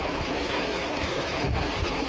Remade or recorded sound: remade